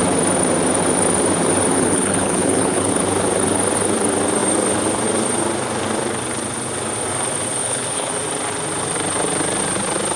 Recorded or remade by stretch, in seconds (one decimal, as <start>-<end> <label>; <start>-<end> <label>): 0.0-1.7 recorded; 1.7-2.9 remade; 2.9-7.6 recorded; 7.6-8.1 remade; 8.1-10.2 recorded